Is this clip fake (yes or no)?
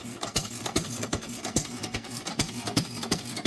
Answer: yes